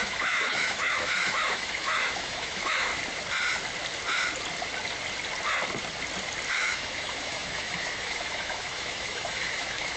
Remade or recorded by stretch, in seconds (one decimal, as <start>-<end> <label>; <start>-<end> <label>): 0.0-2.9 remade; 2.9-6.5 recorded; 6.5-10.0 remade